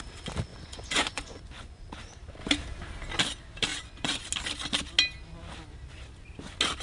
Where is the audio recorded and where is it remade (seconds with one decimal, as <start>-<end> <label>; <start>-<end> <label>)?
0.0-0.5 recorded; 0.5-1.8 remade; 1.8-3.7 recorded; 3.7-4.3 remade; 4.3-6.8 recorded